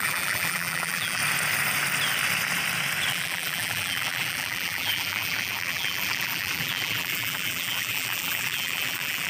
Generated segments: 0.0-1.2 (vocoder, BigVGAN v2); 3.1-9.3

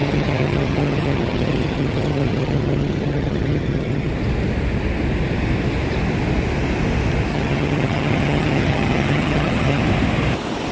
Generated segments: 0.0-4.1 (vocoder, HiFi-GAN); 7.3-9.8

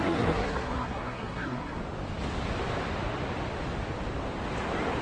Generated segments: 0.0-1.8 (codec, SNAC)

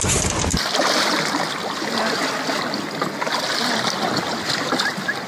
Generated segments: none

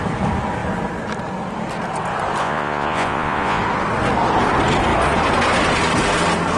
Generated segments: 2.4-3.6 (vocoder, Vocos)

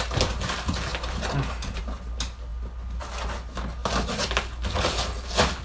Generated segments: none

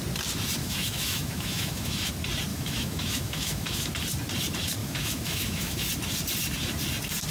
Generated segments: 0.6-2.1 (autoencoder, DAC-VAE); 2.5-3.9; 4.8-5.9